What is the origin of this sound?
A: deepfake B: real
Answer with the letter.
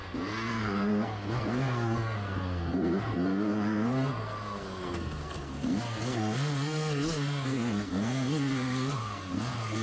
A